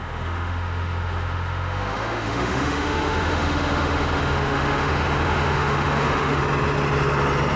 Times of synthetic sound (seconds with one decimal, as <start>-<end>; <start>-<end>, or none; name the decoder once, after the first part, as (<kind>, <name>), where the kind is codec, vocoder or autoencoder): 0.0-6.4 (autoencoder, DAC-VAE)